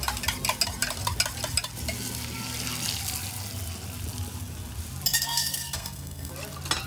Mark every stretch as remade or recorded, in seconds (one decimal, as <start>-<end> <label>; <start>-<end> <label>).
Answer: 0.0-5.1 recorded; 5.1-6.3 remade; 6.3-6.9 recorded